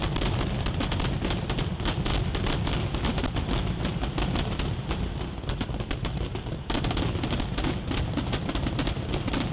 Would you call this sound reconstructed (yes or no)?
no